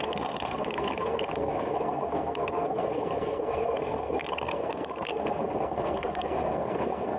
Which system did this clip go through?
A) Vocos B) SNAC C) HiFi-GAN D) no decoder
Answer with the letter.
B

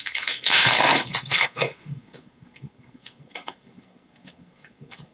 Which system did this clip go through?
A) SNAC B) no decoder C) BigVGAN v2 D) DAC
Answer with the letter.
A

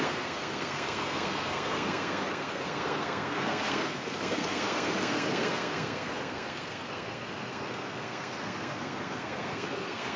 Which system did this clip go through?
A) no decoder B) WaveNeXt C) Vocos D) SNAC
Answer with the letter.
D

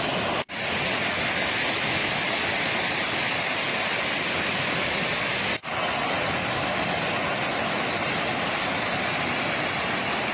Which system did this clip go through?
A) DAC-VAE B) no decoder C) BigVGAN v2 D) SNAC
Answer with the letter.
B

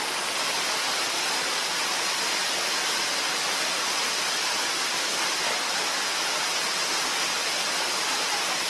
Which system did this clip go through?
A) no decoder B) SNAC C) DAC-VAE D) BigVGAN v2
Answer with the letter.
A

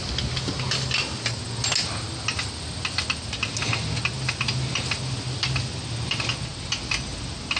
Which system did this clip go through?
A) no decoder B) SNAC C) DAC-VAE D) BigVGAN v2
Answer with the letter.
A